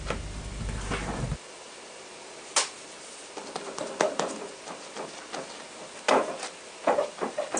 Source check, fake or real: real